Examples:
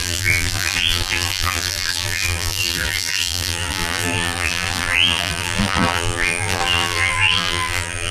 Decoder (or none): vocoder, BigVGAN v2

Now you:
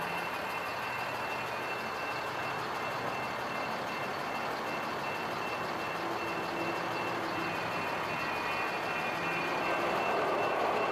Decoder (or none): none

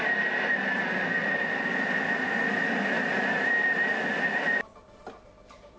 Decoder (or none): none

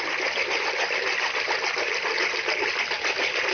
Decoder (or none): none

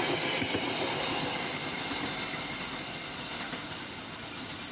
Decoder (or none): none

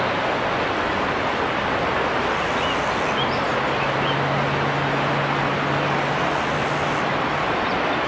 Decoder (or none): none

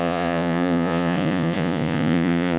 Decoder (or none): vocoder, Vocos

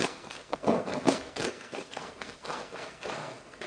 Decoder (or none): codec, SNAC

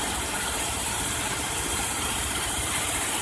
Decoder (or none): vocoder, BigVGAN v2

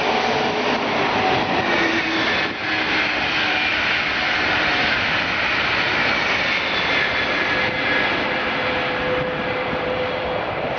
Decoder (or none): none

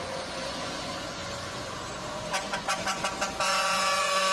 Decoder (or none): vocoder, Vocos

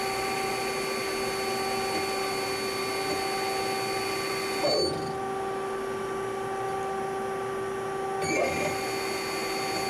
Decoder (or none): none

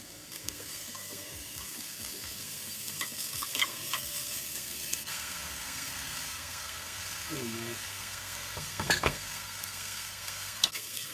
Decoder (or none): codec, SNAC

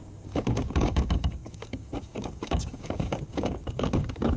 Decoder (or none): codec, DAC